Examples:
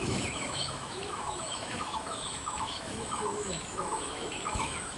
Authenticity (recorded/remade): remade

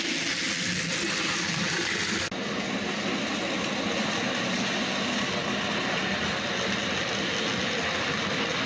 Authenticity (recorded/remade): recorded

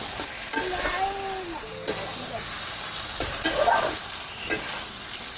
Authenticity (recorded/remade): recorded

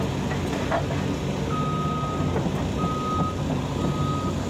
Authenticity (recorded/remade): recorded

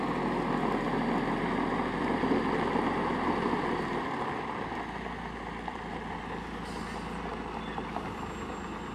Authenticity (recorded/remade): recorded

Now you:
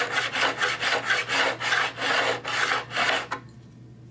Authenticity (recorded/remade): recorded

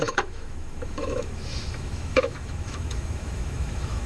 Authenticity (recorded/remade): remade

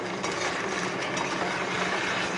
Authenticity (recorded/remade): recorded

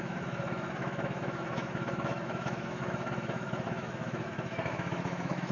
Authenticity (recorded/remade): remade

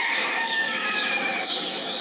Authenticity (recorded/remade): remade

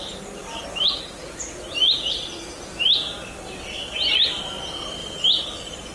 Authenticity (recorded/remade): recorded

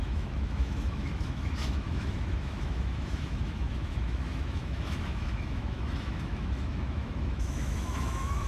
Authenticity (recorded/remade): remade